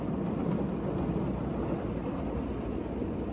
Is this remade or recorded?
recorded